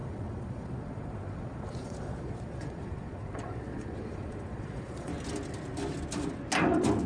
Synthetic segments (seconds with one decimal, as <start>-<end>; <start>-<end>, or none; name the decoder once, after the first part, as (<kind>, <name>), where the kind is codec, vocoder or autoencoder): 0.0-5.1 (vocoder, Vocos)